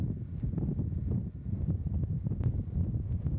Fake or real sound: real